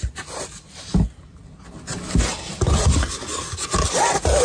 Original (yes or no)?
yes